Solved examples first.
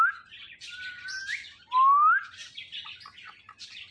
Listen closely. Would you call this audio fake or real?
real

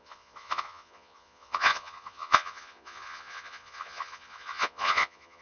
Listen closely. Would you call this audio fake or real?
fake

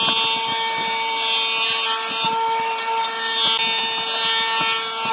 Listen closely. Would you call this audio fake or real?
real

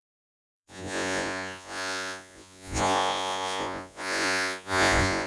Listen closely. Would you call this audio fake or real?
fake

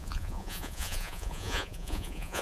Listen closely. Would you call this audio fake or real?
fake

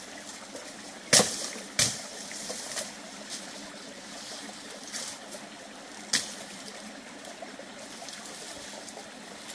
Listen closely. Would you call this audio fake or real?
real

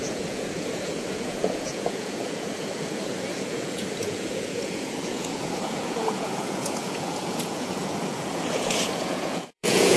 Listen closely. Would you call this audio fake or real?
fake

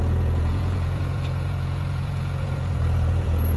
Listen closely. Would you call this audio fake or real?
fake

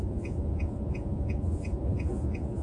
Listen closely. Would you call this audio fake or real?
fake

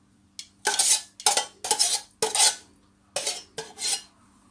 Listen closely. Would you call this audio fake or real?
real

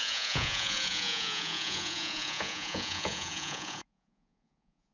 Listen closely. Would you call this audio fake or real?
fake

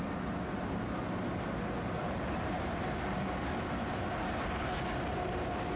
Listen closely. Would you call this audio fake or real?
real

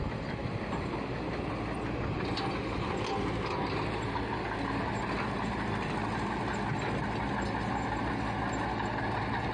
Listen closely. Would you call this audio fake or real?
real